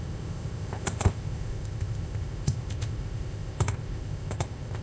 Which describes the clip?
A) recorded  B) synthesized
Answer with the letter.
B